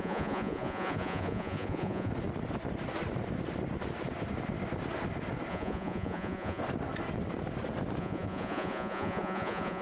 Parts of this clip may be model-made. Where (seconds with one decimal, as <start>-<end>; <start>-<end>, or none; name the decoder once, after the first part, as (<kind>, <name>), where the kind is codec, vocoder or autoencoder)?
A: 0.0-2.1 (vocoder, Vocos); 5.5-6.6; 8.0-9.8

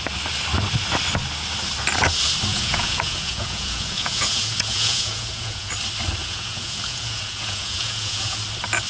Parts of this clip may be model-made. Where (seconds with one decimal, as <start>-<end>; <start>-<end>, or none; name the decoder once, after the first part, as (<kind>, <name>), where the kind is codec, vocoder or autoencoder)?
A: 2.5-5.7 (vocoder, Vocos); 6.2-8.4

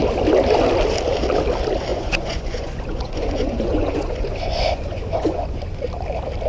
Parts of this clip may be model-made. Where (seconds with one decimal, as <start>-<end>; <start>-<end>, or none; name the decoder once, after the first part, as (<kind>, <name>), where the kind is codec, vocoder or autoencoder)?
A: 1.9-5.8 (vocoder, Vocos)